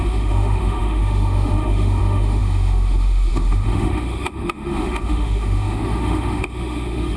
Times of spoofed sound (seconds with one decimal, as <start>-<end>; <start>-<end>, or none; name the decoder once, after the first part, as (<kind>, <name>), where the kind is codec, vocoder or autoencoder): 0.0-7.2 (autoencoder, DAC-VAE)